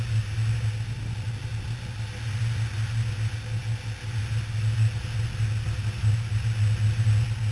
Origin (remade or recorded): recorded